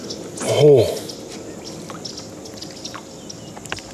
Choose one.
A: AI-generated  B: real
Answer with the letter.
B